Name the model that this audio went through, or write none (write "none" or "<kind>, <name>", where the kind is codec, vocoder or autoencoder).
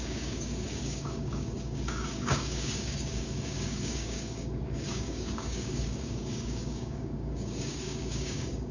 codec, DAC